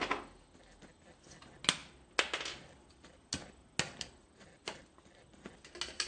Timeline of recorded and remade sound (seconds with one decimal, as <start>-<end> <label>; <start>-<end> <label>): 0.0-6.1 recorded

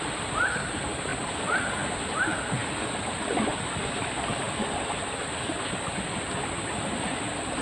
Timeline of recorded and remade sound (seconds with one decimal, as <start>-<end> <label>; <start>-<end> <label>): 0.0-7.6 recorded

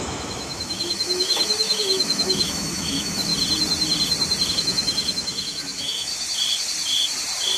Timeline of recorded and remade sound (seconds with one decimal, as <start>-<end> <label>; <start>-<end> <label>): 0.0-3.3 remade; 3.3-4.5 recorded; 4.5-6.1 remade; 6.1-7.6 recorded